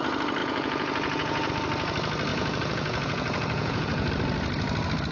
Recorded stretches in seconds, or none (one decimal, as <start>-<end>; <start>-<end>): 0.0-0.4; 1.5-2.3; 4.1-5.1